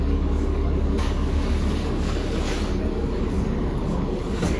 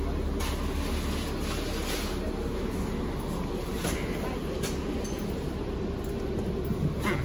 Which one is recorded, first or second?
second